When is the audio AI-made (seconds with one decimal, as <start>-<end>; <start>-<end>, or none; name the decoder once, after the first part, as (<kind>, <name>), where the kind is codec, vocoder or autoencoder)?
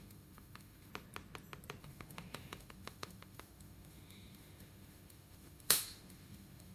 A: 0.0-0.9 (autoencoder, DAC-VAE); 1.8-6.7